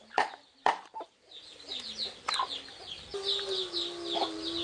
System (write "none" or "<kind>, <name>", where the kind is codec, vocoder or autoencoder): vocoder, BigVGAN v2